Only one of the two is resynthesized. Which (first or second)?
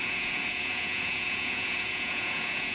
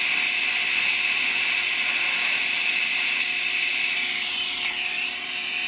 first